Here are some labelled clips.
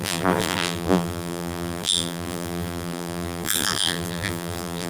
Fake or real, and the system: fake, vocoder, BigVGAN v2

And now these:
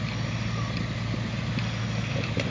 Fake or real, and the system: fake, vocoder, BigVGAN v2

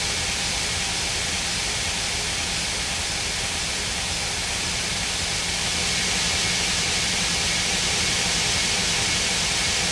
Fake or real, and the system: real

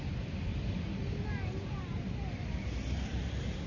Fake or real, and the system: fake, vocoder, BigVGAN v2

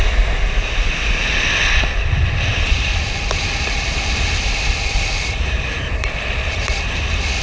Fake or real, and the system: fake, vocoder, BigVGAN v2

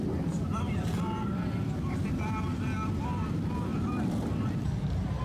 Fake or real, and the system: real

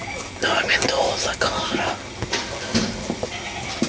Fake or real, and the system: real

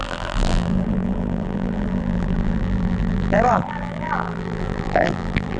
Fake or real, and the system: fake, vocoder, BigVGAN v2